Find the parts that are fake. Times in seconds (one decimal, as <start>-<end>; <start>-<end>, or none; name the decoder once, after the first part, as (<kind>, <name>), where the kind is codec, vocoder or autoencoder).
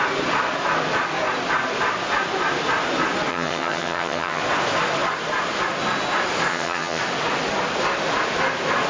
3.3-4.4 (vocoder, HiFi-GAN); 6.5-7.0